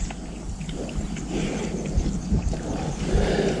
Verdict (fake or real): real